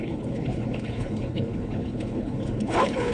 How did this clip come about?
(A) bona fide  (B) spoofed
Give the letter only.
B